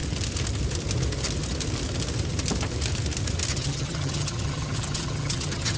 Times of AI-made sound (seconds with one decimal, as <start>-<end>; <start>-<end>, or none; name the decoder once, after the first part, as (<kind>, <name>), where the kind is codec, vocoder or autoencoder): 3.5-5.8 (vocoder, HiFi-GAN)